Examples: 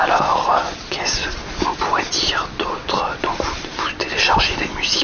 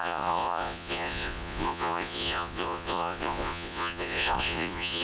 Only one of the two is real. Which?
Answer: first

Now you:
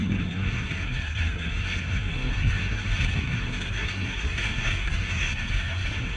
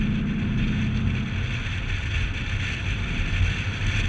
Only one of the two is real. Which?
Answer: second